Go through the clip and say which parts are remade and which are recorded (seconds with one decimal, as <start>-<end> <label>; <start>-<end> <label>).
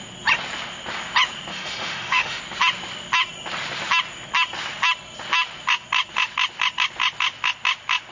0.0-1.5 recorded; 1.5-2.4 remade; 2.4-8.1 recorded